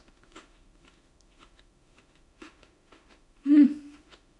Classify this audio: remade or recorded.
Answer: remade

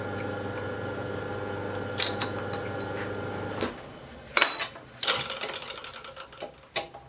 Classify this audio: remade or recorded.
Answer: recorded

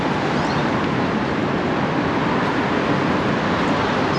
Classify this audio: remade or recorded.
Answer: recorded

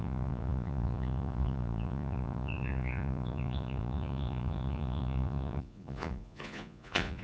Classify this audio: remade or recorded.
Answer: remade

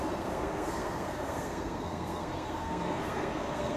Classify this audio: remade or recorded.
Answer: remade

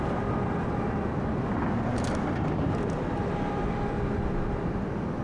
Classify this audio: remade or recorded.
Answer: recorded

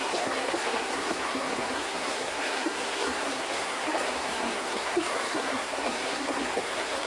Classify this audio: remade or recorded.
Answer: remade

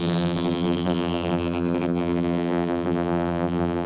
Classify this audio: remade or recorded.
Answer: remade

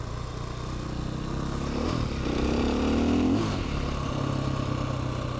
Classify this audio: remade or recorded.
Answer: recorded